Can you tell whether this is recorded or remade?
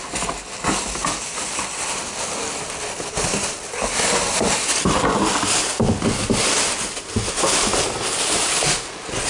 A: recorded